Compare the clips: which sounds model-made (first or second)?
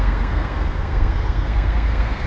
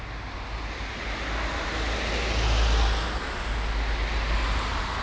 first